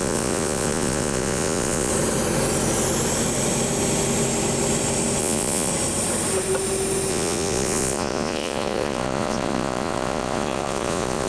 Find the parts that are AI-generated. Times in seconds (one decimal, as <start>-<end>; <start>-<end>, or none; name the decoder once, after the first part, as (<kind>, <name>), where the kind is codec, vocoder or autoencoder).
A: 0.0-1.9 (vocoder, Vocos); 5.2-5.7; 7.1-11.3